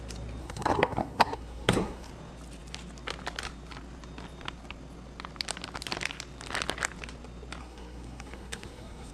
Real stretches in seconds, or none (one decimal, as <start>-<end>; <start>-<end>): 0.0-0.4; 2.1-7.6

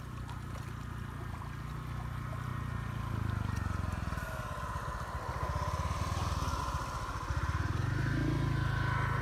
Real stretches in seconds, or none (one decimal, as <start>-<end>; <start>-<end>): 0.0-9.2

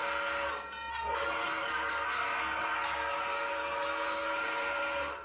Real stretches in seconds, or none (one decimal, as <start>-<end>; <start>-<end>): 0.0-0.9

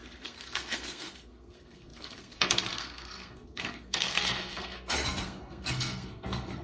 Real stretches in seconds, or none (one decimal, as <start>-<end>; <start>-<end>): none

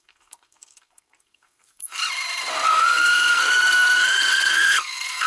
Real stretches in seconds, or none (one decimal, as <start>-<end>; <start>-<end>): 2.0-2.7

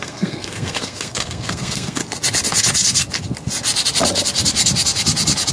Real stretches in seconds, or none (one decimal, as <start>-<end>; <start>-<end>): 2.0-5.5

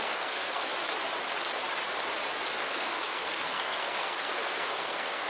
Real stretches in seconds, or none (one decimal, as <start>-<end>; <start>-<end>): 0.6-2.6